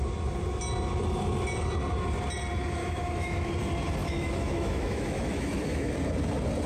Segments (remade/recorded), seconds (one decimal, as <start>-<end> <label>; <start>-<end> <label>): 0.0-2.8 recorded; 2.8-3.5 remade; 3.5-4.0 recorded; 4.0-5.9 remade; 5.9-6.7 recorded